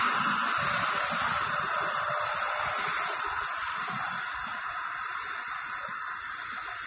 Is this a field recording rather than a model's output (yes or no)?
yes